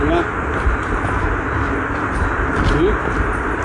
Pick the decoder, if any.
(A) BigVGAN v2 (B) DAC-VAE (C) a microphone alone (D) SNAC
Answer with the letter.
C